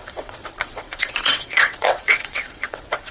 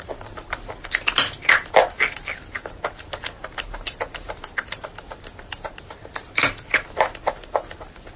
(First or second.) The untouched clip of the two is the second